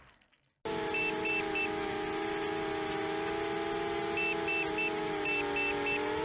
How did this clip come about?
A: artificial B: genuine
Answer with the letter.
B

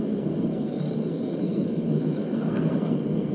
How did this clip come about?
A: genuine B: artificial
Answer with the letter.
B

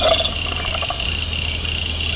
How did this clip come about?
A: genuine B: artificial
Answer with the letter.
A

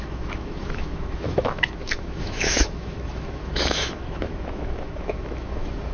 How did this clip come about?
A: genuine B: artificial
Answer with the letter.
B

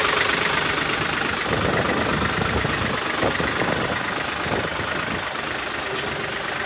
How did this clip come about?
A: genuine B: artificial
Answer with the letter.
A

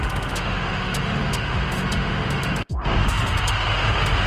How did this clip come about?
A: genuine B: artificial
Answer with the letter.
B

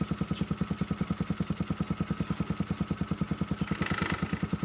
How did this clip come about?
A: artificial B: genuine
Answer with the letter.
B